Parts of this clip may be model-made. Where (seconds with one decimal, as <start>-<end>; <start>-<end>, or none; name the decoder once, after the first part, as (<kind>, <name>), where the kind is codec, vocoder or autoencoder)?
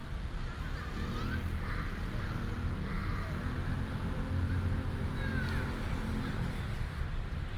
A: none